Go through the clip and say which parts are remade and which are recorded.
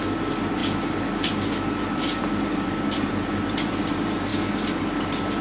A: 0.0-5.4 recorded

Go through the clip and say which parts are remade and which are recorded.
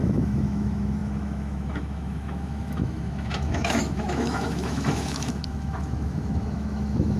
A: 0.0-7.2 remade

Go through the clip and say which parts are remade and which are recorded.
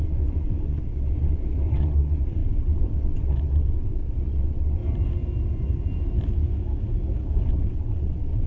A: 0.0-4.8 remade; 4.8-7.5 recorded; 7.5-8.5 remade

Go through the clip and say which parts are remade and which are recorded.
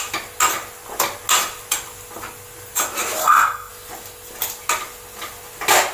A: 0.0-3.2 recorded; 3.2-3.7 remade; 3.7-5.9 recorded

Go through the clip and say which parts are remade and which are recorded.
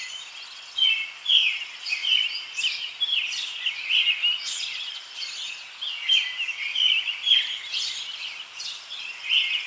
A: 0.0-9.7 recorded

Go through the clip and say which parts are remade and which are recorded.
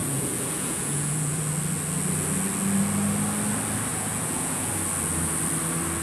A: 0.0-1.4 remade; 1.4-3.9 recorded; 3.9-4.7 remade; 4.7-6.0 recorded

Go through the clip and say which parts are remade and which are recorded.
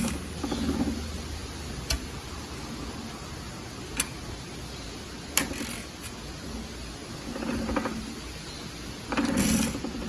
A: 0.0-1.4 recorded; 1.4-2.6 remade; 2.6-10.1 recorded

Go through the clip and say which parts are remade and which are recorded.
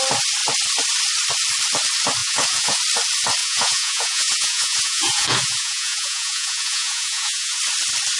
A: 0.0-2.2 recorded; 2.2-2.8 remade; 2.8-3.4 recorded; 3.4-7.6 remade; 7.6-8.2 recorded